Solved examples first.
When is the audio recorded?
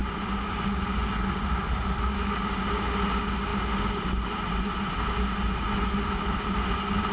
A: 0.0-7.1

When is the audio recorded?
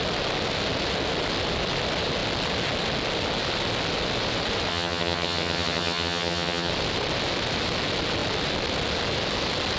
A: 0.0-4.7; 6.7-9.8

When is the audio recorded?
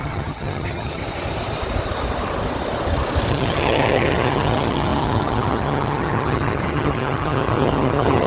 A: 1.0-3.3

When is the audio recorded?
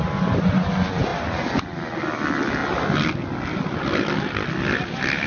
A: 0.0-5.3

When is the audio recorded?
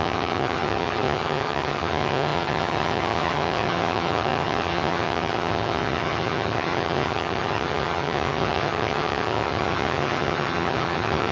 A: none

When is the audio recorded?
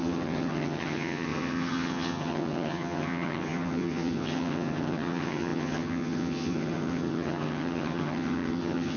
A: none